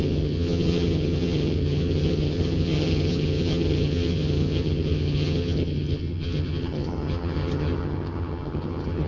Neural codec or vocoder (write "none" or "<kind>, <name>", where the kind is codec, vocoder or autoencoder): vocoder, HiFi-GAN